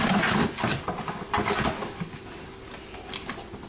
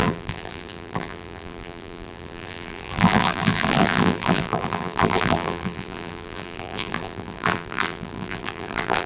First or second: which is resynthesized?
second